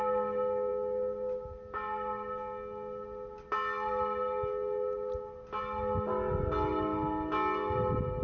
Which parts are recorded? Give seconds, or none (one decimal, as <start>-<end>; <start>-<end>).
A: 0.0-8.2